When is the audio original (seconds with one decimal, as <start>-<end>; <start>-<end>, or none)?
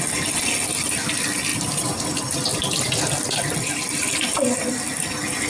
0.0-1.5; 4.8-5.5